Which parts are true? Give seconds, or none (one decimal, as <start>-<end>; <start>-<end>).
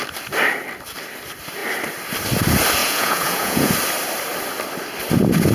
0.0-2.8; 3.7-5.5